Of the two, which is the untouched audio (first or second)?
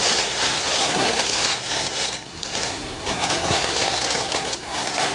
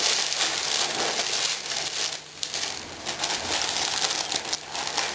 second